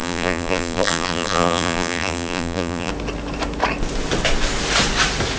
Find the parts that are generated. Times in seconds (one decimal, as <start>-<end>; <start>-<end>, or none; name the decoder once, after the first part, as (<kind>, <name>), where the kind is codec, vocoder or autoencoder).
0.0-2.9 (vocoder, BigVGAN v2)